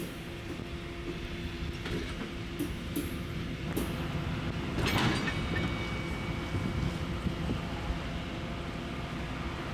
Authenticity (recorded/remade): recorded